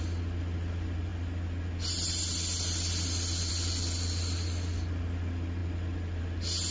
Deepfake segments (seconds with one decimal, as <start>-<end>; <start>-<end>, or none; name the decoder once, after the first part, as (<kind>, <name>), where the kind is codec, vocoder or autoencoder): none